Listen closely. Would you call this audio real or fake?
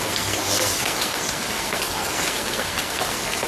fake